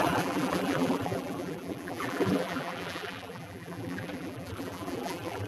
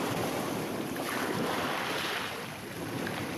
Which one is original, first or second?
second